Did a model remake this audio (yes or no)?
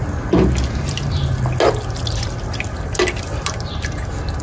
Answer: no